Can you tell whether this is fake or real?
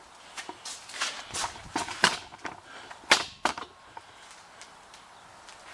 real